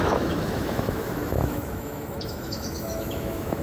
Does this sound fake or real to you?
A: fake